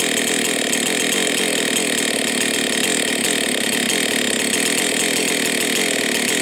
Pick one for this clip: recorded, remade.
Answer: recorded